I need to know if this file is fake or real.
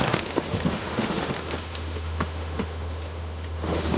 fake